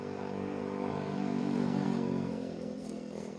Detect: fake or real fake